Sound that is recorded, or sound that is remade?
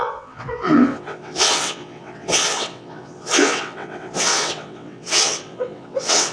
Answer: remade